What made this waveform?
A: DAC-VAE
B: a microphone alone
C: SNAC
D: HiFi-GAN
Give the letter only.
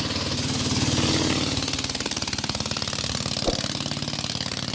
B